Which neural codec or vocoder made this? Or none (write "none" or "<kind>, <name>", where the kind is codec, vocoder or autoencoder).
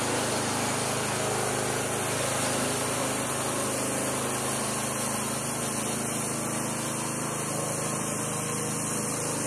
none